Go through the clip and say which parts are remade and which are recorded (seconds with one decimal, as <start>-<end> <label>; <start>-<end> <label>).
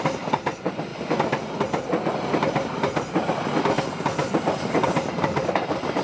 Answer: 0.0-0.9 remade; 0.9-4.3 recorded; 4.3-6.0 remade